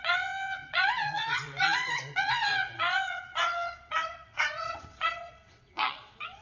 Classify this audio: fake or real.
fake